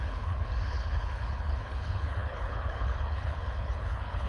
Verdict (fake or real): fake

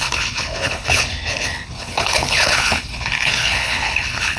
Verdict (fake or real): fake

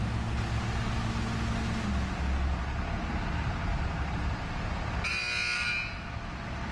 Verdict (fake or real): real